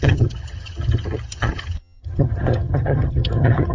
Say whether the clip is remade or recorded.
remade